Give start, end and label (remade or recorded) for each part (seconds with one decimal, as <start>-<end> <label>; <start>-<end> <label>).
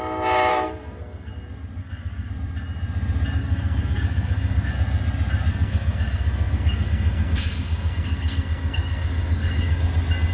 0.0-0.5 recorded; 0.5-1.3 remade; 1.3-1.8 recorded; 1.8-2.3 remade; 2.3-3.4 recorded; 3.4-4.7 remade; 4.7-5.5 recorded; 5.5-9.8 remade; 9.8-10.3 recorded